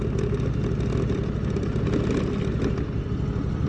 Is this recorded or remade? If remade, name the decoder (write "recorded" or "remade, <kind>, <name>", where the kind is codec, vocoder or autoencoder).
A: recorded